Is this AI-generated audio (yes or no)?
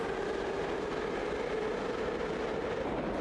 no